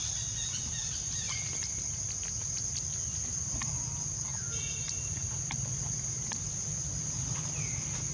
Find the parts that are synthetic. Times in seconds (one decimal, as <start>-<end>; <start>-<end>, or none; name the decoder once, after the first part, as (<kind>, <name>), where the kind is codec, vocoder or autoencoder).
none